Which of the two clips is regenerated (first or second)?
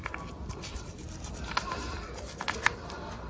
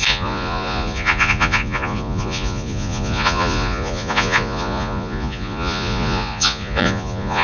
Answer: second